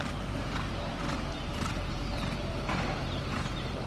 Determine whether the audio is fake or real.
fake